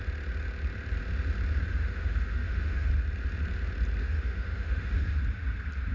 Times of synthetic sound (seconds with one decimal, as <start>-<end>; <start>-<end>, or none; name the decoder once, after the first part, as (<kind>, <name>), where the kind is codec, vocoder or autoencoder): 1.7-2.9 (autoencoder, DAC-VAE); 4.0-5.2